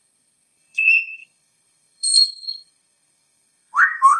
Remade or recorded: remade